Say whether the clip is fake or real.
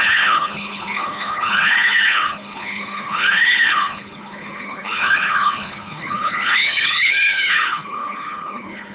fake